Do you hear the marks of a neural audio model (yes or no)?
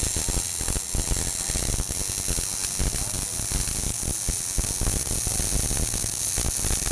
no